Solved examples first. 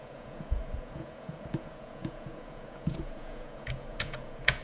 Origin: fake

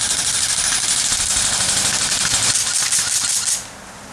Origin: fake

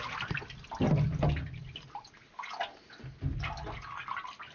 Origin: real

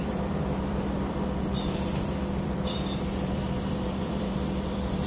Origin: fake